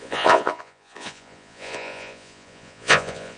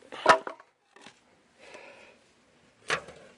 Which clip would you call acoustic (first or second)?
second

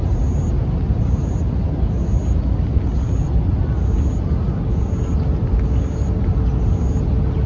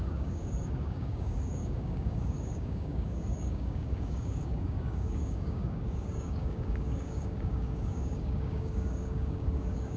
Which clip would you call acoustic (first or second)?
first